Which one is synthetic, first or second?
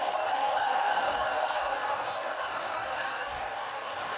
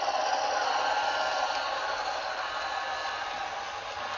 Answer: first